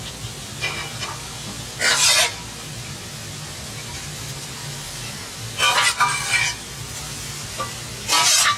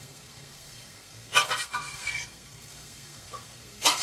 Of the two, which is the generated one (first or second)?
second